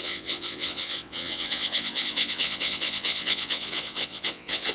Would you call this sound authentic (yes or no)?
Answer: no